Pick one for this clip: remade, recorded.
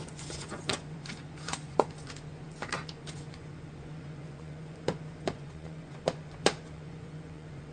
remade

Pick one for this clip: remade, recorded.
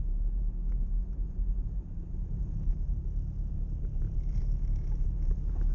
remade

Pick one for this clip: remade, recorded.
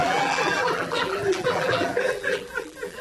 remade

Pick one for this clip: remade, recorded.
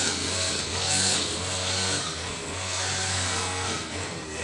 remade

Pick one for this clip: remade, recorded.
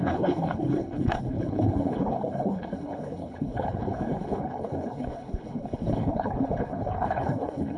remade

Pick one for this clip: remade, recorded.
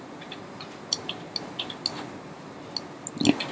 recorded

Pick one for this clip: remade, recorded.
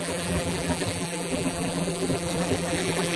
remade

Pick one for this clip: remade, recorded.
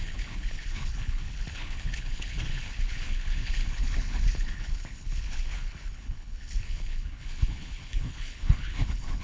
remade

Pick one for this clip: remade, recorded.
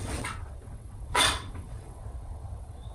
remade